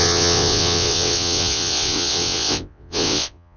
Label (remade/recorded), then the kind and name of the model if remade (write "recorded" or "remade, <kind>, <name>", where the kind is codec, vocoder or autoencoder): remade, vocoder, WaveNeXt